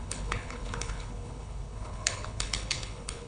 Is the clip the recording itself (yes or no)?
no